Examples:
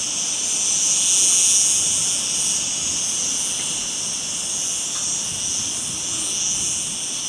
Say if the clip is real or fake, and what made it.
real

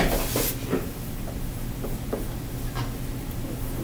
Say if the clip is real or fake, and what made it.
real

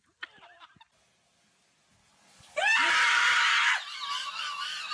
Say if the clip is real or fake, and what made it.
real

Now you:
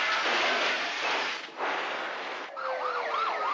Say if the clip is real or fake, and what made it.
real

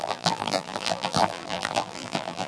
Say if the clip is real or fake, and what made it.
fake, vocoder, BigVGAN v2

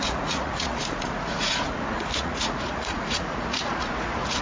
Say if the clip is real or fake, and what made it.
fake, vocoder, Vocos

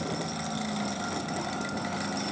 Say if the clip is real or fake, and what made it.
real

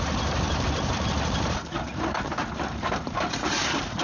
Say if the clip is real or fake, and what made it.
fake, vocoder, BigVGAN v2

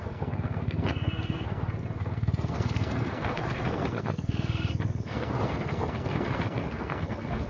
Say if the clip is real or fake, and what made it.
fake, codec, SNAC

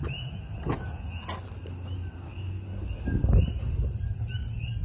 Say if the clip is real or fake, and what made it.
real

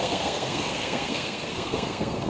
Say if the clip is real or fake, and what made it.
fake, codec, SNAC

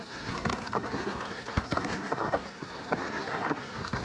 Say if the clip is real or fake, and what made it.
fake, codec, SNAC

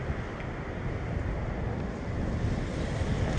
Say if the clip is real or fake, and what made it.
real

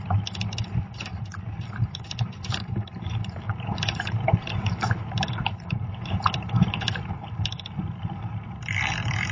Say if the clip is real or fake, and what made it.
fake, vocoder, BigVGAN v2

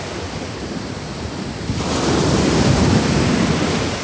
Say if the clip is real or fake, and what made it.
real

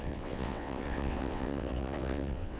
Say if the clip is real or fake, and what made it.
fake, vocoder, WaveNeXt